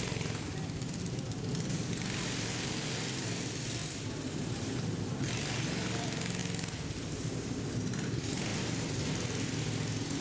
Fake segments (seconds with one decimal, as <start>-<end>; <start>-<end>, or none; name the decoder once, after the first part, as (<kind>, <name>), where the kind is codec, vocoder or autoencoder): 3.8-5.3 (vocoder, BigVGAN v2); 8.5-9.0